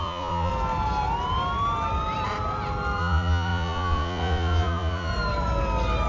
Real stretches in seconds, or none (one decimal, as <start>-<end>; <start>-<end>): 0.5-3.0; 5.1-6.1